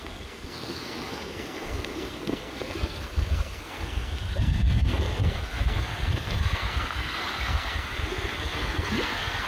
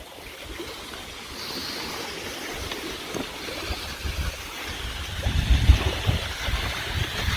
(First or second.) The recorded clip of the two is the second